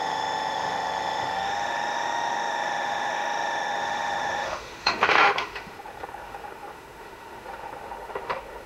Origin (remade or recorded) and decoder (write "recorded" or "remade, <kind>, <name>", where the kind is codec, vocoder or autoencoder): remade, autoencoder, DAC-VAE